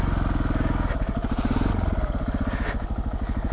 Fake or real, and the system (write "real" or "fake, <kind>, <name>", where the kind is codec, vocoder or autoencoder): real